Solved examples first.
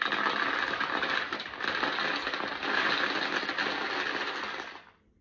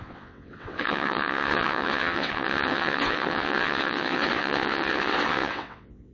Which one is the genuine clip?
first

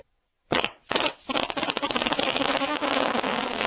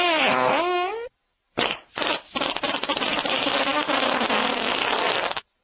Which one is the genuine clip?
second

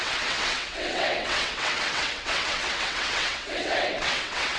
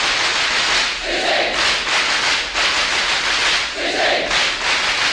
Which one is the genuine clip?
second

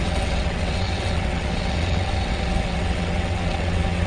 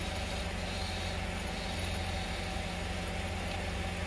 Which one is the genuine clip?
second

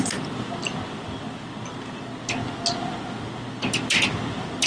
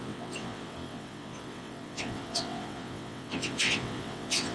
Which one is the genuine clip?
first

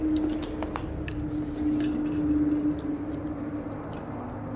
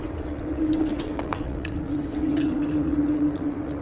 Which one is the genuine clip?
first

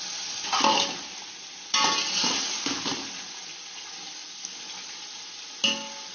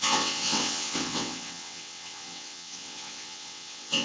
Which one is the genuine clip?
first